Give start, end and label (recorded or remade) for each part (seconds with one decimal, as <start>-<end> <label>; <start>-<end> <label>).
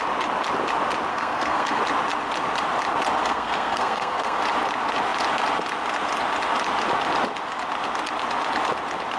0.0-1.1 recorded; 1.1-1.8 remade; 1.8-3.2 recorded; 3.2-4.4 remade; 4.4-9.2 recorded